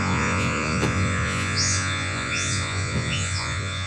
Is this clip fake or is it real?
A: fake